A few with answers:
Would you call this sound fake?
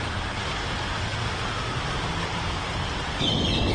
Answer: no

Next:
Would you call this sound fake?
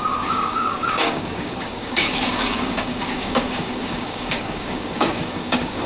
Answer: yes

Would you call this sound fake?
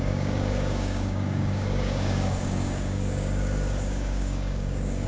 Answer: yes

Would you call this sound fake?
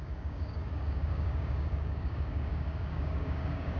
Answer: yes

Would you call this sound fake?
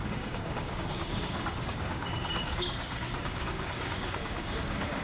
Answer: yes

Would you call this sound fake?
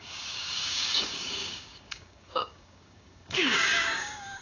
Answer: yes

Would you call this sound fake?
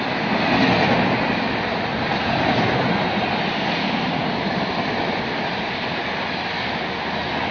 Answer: no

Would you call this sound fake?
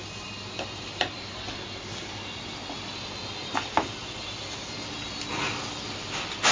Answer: no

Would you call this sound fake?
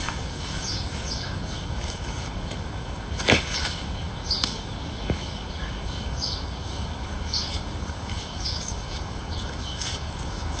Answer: yes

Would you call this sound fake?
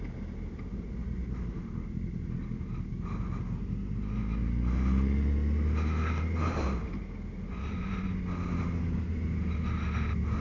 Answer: no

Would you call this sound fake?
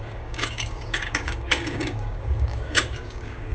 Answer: yes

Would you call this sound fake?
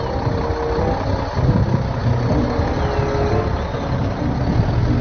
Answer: no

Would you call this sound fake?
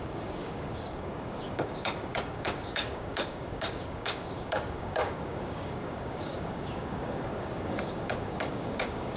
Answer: yes